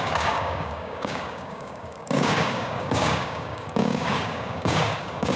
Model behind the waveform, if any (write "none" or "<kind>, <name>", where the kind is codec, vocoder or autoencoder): codec, DAC